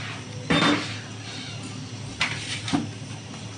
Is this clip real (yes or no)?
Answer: yes